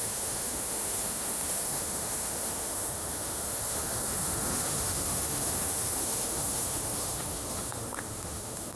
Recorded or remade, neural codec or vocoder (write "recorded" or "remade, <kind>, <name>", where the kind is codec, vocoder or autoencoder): remade, autoencoder, DAC-VAE